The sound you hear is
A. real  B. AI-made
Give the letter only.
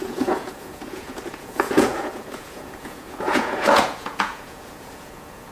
B